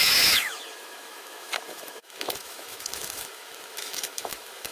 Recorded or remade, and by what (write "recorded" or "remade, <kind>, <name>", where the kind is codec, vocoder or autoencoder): remade, autoencoder, DAC-VAE